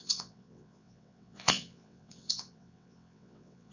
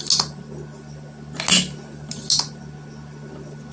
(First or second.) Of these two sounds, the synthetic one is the first